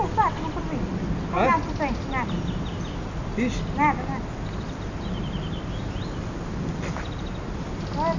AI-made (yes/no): no